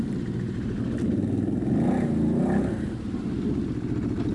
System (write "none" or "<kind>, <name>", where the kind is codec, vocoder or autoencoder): none